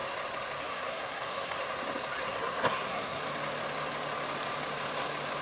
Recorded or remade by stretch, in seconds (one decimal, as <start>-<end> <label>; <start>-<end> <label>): 0.0-0.6 recorded; 0.6-1.6 remade; 1.6-2.3 recorded; 2.3-3.2 remade; 3.2-5.4 recorded